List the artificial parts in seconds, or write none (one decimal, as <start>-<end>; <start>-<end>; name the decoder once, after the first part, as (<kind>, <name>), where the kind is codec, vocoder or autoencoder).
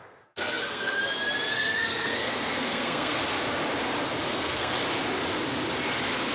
0.0-1.0 (codec, SNAC); 1.5-3.2; 4.3-4.8